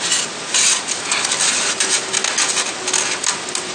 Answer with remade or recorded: recorded